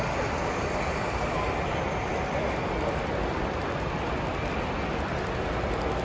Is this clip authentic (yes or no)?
yes